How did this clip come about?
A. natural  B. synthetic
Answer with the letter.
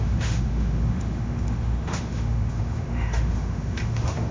B